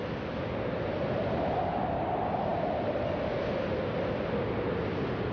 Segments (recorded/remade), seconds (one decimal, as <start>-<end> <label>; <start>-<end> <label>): 0.0-5.3 recorded